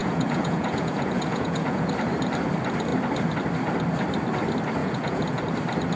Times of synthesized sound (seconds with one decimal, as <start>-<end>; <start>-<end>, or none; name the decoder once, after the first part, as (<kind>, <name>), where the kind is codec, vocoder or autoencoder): 0.0-1.9 (vocoder, Vocos); 4.8-5.4